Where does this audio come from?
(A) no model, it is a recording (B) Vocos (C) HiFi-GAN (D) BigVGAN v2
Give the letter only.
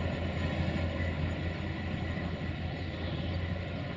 A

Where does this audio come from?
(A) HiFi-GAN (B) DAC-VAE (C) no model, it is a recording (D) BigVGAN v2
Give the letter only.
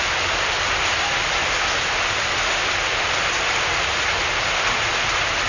C